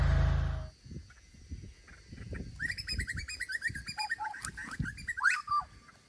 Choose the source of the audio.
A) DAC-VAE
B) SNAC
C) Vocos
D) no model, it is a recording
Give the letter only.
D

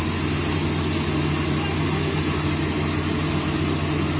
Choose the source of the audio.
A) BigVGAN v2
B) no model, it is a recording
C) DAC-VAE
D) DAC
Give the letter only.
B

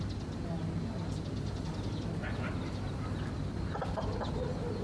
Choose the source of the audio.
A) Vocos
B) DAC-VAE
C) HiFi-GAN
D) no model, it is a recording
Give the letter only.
D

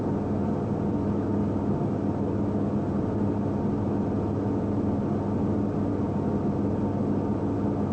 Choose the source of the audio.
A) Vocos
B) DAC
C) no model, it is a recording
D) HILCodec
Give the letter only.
C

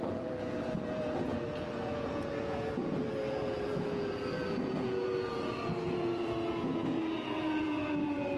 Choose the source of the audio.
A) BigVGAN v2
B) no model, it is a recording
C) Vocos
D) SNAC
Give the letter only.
C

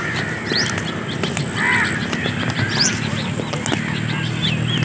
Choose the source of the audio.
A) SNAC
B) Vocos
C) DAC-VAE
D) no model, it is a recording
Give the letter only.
D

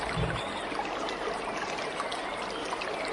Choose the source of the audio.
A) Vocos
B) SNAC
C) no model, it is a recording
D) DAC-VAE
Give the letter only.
C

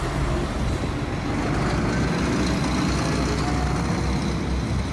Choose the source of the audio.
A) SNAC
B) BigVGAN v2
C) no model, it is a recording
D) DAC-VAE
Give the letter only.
C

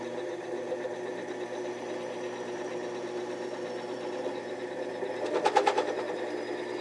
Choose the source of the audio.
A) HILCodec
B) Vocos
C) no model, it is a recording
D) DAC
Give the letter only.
C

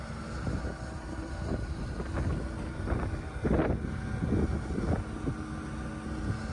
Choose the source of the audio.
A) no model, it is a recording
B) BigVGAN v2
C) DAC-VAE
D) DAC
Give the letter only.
A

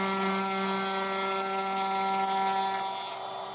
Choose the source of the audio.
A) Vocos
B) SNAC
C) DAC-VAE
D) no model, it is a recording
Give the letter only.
D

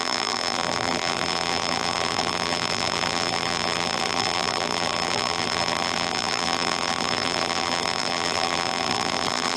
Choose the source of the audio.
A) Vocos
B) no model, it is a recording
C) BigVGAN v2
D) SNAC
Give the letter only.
C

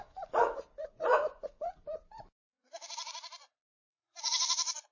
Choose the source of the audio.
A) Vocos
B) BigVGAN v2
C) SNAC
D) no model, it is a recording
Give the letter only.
A